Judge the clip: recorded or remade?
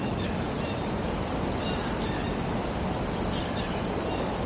recorded